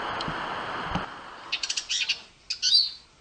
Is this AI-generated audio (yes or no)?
no